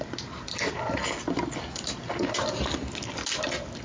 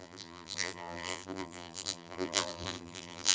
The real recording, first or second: first